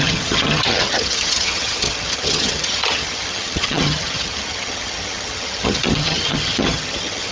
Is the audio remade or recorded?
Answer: remade